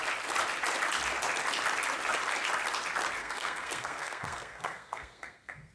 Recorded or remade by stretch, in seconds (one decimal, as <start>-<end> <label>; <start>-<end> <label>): 0.0-3.2 recorded; 3.2-5.7 remade